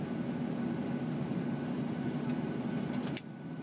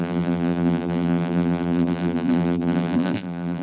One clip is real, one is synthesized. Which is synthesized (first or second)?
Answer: second